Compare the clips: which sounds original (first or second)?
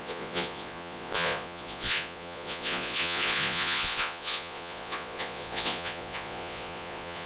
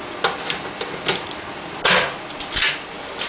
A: second